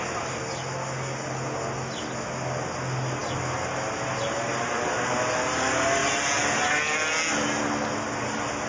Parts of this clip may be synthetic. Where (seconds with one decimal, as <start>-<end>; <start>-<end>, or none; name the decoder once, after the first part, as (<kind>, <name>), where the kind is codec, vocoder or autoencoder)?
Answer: none